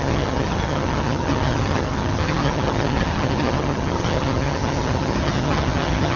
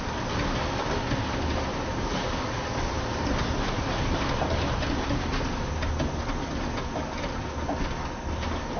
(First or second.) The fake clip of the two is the first